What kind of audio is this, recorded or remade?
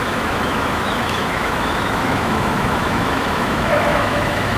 remade